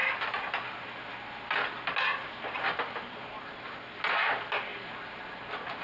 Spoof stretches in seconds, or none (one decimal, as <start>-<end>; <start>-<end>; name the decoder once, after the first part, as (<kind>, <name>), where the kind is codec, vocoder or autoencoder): none